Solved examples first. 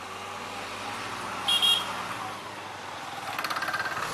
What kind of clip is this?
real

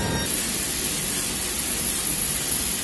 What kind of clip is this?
fake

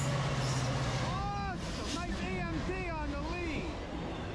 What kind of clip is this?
real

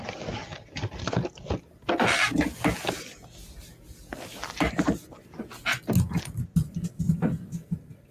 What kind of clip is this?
real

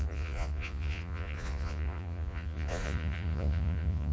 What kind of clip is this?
fake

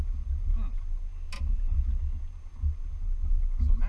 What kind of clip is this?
real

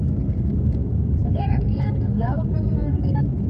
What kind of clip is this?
fake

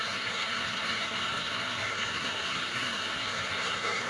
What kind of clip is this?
fake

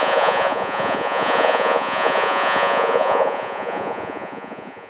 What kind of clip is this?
fake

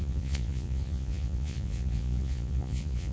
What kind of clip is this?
fake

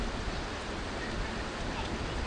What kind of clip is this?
real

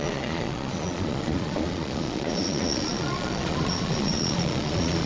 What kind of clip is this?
fake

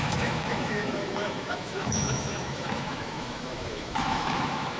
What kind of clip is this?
fake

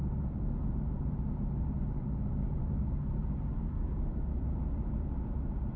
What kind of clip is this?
fake